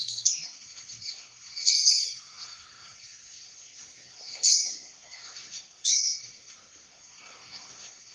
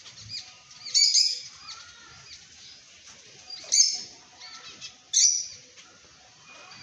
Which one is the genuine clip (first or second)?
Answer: second